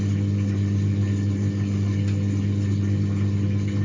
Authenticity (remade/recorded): recorded